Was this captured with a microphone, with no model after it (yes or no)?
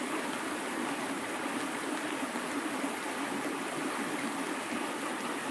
yes